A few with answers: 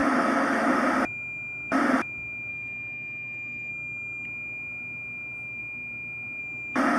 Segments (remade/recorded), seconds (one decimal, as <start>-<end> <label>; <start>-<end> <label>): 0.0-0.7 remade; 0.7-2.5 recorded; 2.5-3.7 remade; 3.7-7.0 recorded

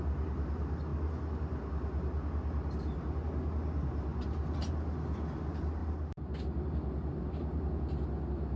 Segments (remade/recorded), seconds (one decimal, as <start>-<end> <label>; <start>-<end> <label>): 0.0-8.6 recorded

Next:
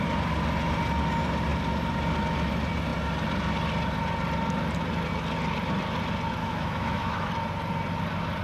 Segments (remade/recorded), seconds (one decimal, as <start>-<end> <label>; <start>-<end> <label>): 0.0-6.4 recorded; 6.4-7.3 remade; 7.3-8.4 recorded

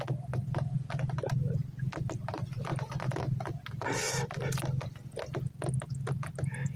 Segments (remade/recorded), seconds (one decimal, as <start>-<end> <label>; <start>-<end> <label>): 0.0-6.8 recorded